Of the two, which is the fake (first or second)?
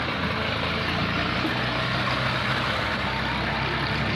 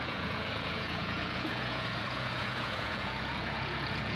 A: second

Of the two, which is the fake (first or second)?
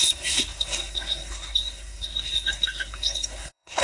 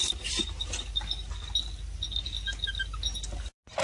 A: first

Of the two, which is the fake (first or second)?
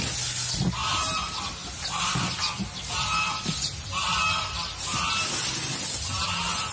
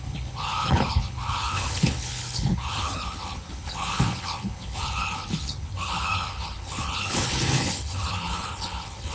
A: second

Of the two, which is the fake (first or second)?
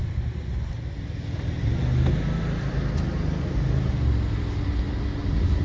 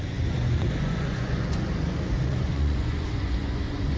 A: second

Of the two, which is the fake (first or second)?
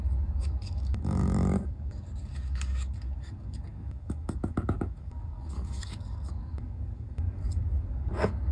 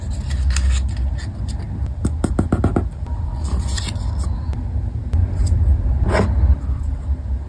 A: first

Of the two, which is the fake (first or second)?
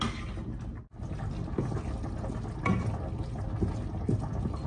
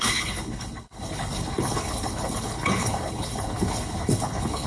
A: second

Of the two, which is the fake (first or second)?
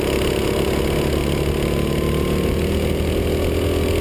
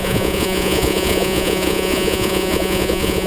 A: second